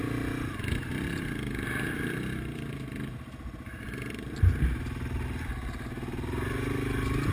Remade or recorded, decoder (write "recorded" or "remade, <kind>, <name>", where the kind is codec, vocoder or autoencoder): recorded